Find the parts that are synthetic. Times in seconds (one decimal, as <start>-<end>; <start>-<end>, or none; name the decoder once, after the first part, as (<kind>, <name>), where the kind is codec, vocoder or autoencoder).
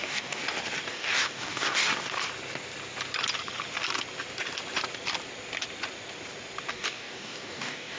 0.0-0.4 (codec, DAC); 0.9-1.9; 6.7-8.0